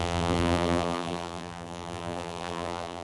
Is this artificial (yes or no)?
yes